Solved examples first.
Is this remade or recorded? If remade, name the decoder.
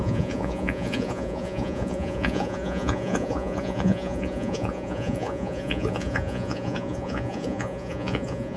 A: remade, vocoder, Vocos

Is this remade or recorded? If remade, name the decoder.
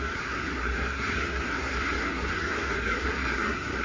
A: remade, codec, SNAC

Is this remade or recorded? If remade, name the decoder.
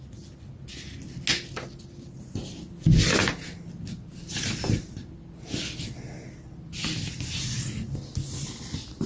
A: recorded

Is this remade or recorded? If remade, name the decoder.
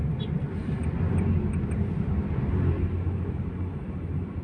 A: recorded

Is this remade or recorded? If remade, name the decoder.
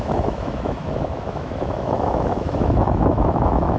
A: remade, autoencoder, DAC-VAE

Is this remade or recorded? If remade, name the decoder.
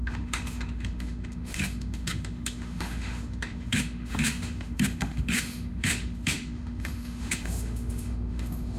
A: remade, autoencoder, DAC-VAE